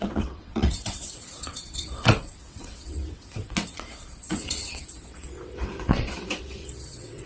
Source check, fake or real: fake